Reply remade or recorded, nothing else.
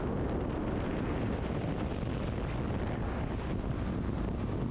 recorded